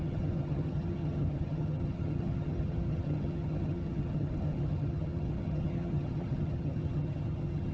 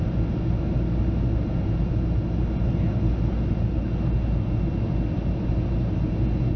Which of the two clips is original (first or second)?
second